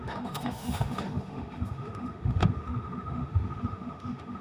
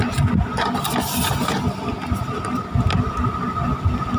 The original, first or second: second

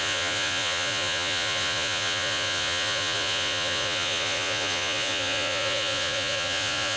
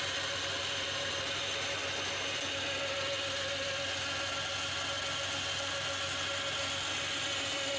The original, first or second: second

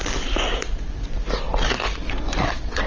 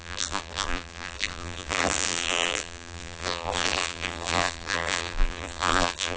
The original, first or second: first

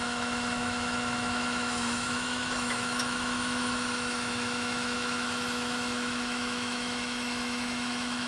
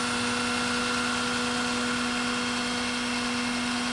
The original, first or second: second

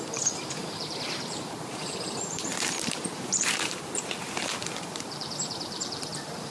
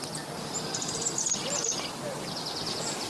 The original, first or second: second